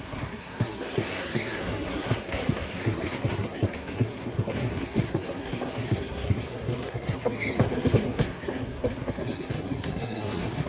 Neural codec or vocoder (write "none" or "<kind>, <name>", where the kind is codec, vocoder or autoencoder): codec, SNAC